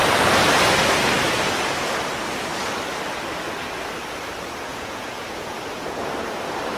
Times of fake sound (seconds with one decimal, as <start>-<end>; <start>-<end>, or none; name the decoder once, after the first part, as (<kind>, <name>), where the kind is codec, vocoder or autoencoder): 4.7-6.1 (vocoder, Vocos)